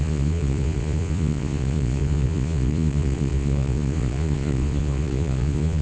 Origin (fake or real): fake